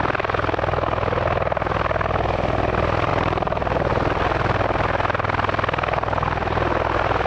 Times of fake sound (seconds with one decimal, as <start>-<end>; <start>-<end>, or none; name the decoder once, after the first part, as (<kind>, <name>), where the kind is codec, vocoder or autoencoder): 3.1-3.9 (vocoder, BigVGAN v2)